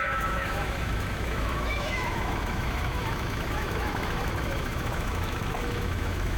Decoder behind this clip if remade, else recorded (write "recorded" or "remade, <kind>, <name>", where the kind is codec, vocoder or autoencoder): remade, autoencoder, DAC-VAE